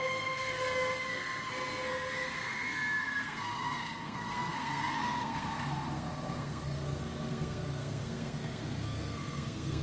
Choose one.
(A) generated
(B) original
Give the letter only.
A